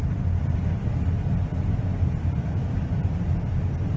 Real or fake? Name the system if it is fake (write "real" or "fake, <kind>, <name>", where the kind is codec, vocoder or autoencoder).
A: real